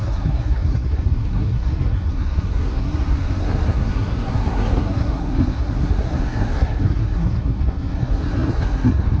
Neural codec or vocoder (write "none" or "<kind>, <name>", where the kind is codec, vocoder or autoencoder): codec, SNAC